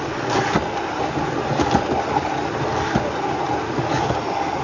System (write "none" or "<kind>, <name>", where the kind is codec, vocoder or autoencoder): none